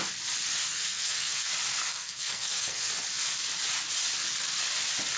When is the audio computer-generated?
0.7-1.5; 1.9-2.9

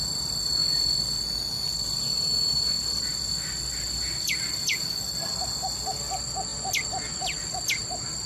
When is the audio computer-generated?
none

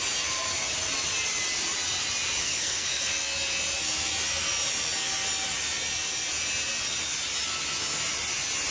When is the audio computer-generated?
2.4-3.1

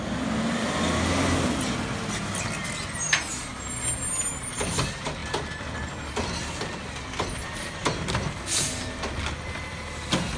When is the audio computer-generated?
none

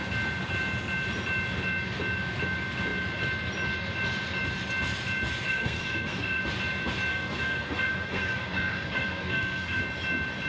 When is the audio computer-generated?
5.5-6.4; 7.1-9.8

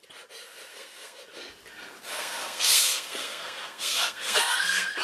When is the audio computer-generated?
0.7-1.2; 2.0-5.0

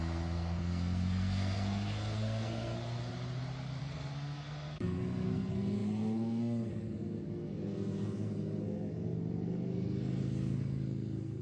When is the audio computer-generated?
0.0-3.1; 3.8-11.4

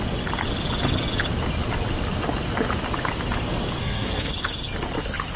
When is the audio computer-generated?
3.8-4.3